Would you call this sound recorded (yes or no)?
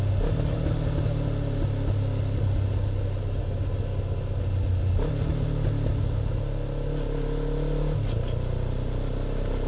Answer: yes